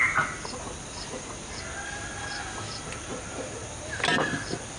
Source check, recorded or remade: recorded